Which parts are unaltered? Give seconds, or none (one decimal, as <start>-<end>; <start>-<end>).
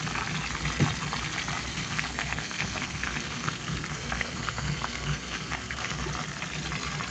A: 0.0-1.7; 6.0-7.1